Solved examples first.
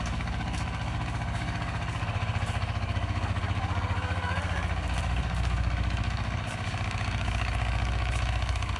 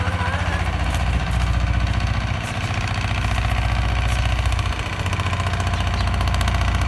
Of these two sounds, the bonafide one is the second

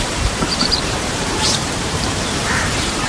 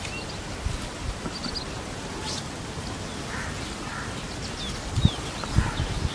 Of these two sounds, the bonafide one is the second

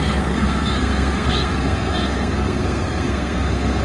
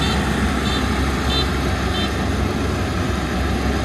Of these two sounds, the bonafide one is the second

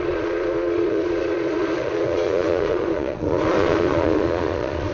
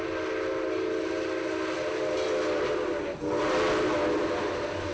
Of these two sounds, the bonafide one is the second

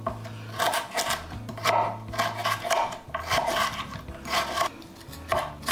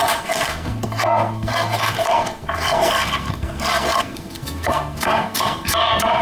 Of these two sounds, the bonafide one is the first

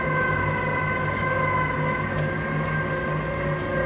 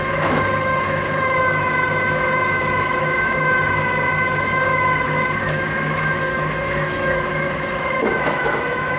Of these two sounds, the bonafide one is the first